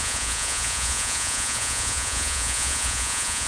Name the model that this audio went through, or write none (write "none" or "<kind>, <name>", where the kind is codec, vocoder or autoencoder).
vocoder, Vocos